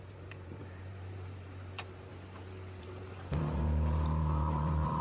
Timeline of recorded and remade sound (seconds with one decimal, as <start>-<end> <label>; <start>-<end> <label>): 0.0-2.1 remade; 2.1-2.8 recorded; 2.8-5.0 remade